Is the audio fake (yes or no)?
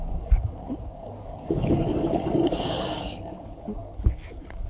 yes